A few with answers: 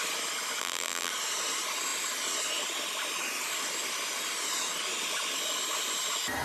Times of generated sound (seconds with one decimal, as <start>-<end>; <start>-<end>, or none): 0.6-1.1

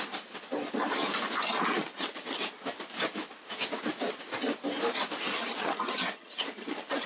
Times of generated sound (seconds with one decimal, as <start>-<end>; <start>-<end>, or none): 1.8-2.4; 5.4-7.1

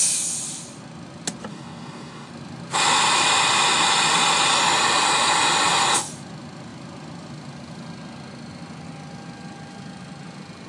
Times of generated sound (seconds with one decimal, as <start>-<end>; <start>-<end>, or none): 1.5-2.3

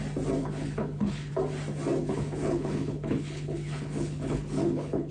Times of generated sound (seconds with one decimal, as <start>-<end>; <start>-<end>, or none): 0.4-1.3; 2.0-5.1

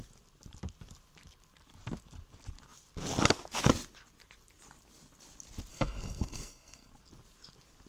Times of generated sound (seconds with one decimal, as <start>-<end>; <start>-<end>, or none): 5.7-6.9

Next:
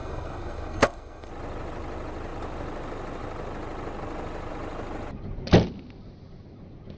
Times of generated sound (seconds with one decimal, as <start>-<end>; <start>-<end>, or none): 0.0-1.3

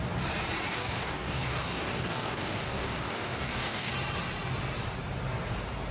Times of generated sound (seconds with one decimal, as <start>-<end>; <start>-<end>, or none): 0.7-3.9

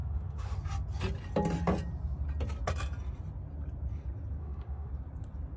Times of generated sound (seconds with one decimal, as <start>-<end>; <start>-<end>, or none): 0.0-0.6; 4.4-4.9